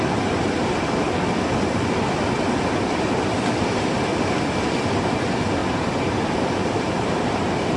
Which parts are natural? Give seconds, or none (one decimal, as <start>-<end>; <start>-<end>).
0.0-5.6